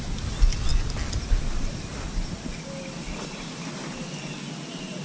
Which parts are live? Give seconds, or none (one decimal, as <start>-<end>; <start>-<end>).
0.0-5.0